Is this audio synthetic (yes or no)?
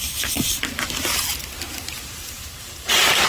yes